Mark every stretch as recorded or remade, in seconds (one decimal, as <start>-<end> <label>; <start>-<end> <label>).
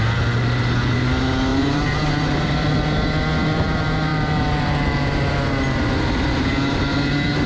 0.0-1.5 recorded; 1.5-2.7 remade; 2.7-7.5 recorded